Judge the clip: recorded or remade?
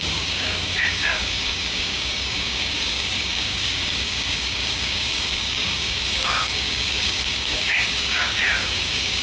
remade